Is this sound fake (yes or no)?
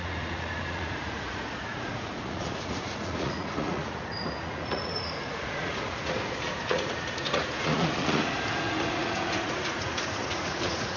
yes